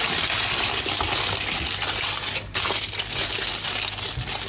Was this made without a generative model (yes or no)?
yes